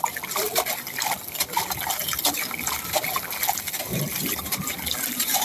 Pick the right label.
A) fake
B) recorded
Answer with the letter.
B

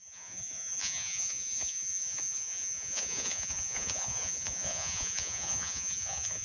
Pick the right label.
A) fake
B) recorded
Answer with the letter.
A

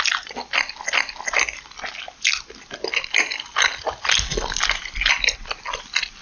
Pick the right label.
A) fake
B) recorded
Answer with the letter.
B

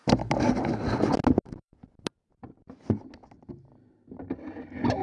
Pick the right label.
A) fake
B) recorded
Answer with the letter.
B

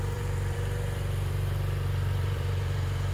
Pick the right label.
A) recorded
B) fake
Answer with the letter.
B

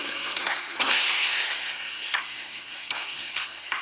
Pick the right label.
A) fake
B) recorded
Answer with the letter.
A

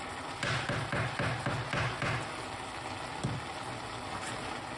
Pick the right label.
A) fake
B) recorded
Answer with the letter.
B